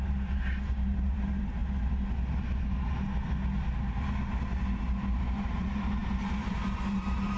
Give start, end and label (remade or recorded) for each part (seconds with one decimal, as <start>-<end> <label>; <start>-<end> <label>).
0.0-1.6 remade; 1.6-5.2 recorded; 5.2-7.4 remade